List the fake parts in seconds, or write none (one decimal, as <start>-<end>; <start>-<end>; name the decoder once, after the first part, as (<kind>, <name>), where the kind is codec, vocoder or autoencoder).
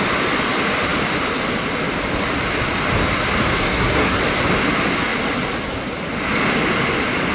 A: 3.6-4.2 (codec, SNAC)